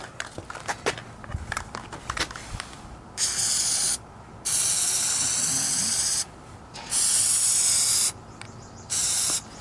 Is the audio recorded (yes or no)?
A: yes